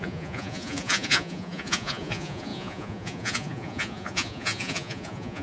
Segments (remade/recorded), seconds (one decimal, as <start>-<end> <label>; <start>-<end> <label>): 0.0-5.4 remade